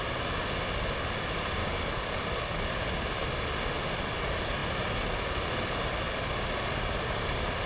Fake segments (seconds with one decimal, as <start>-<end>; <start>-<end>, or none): 1.6-2.7